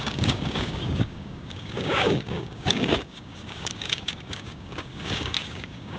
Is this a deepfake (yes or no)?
yes